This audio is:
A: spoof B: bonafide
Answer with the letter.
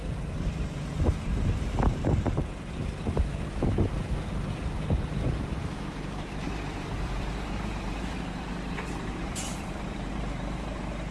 A